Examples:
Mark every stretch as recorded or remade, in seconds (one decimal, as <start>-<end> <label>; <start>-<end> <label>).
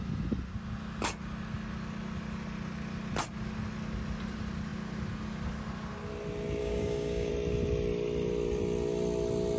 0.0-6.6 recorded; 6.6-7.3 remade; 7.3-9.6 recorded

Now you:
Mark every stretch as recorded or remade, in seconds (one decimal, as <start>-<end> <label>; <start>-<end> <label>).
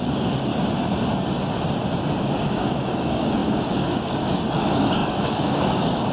0.0-0.5 remade; 0.5-2.2 recorded; 2.2-6.1 remade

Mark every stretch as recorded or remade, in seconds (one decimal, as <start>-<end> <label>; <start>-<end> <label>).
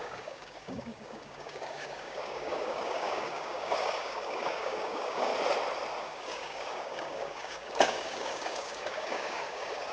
0.0-5.3 remade; 5.3-6.0 recorded; 6.0-9.9 remade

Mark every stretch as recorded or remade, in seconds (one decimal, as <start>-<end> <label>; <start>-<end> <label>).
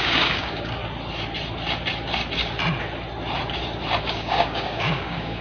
0.0-0.8 remade; 0.8-4.0 recorded; 4.0-5.4 remade